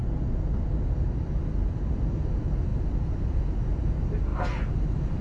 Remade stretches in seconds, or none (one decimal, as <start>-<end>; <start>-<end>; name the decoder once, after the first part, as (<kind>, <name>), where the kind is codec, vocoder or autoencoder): 2.7-3.4 (vocoder, BigVGAN v2); 4.3-5.2